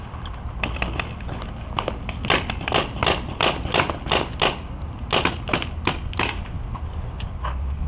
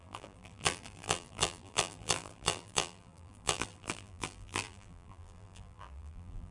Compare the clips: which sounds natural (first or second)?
first